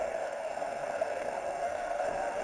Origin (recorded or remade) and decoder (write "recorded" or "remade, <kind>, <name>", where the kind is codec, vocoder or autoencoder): remade, codec, SNAC